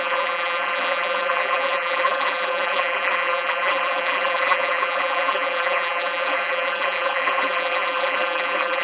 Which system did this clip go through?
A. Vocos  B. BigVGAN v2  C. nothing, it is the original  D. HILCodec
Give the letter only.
B